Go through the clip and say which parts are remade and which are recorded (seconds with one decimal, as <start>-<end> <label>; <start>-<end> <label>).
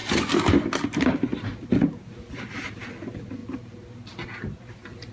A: 0.0-5.1 recorded